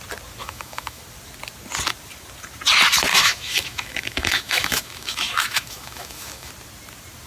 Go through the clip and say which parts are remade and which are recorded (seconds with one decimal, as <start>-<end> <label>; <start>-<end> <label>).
0.0-0.4 recorded; 0.4-1.0 remade; 1.0-3.1 recorded; 3.1-6.5 remade; 6.5-7.3 recorded